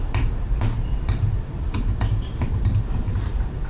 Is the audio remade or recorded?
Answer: remade